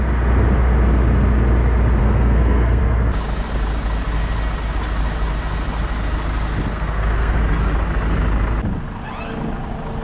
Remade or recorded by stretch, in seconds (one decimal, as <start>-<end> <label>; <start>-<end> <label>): 0.0-2.0 recorded; 2.0-2.8 remade; 2.8-6.7 recorded; 6.7-7.4 remade; 7.4-10.0 recorded